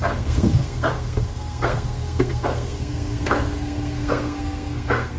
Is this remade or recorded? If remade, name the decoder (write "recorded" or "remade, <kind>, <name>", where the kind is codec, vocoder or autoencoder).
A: remade, codec, SNAC